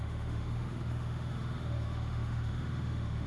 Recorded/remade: remade